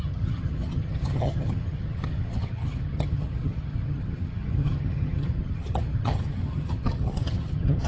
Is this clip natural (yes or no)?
no